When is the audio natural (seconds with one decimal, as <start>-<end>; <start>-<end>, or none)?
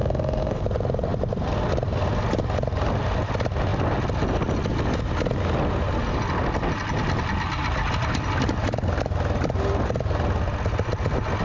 0.6-11.4